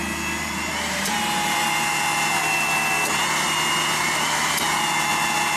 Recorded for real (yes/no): yes